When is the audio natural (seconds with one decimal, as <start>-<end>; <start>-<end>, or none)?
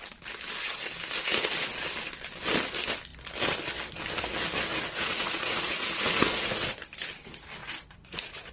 0.0-4.7; 6.8-7.6